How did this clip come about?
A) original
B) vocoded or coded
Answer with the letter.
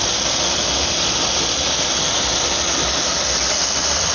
A